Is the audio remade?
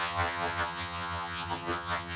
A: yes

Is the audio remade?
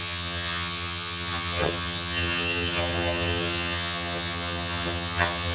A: yes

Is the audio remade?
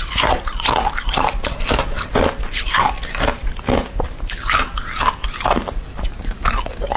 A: no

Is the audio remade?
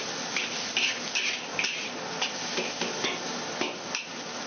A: no